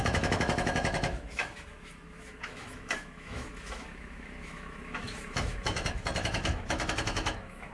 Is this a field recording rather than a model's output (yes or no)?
no